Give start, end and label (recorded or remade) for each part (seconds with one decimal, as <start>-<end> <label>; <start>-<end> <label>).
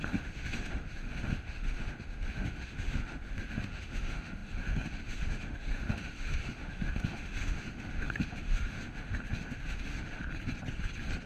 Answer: 0.0-10.2 remade; 10.2-11.3 recorded